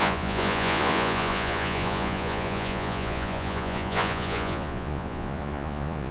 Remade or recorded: remade